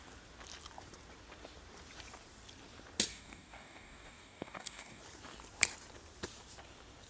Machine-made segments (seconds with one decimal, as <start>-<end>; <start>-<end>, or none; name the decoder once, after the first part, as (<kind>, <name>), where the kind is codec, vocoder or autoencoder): 3.1-5.0 (codec, DAC)